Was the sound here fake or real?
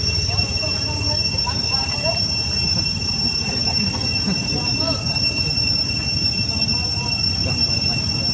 real